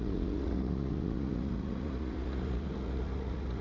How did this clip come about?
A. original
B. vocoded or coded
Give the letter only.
B